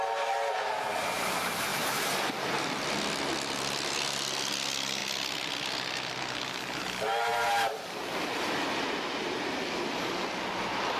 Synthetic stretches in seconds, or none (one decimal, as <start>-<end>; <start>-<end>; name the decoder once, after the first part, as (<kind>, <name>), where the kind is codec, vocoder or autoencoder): none